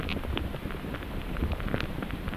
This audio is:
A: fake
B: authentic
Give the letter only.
A